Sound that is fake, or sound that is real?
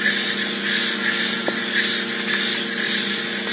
real